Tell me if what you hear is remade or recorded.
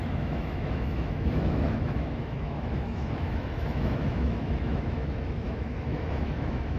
remade